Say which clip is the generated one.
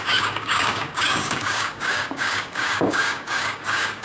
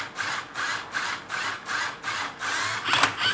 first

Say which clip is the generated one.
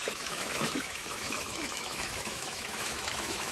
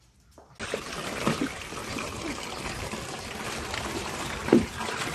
first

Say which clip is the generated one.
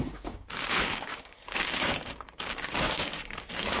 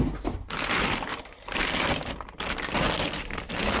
first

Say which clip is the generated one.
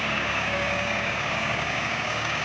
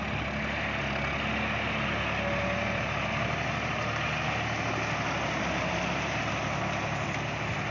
first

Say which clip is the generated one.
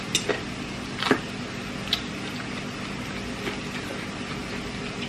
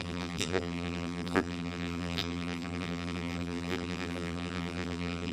second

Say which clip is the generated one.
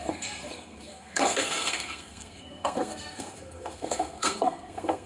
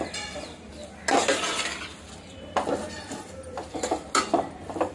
first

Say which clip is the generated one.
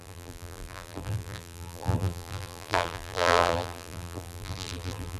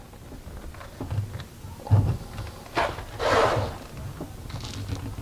first